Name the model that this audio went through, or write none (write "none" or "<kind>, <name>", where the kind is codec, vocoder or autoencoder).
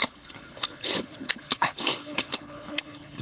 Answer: codec, HILCodec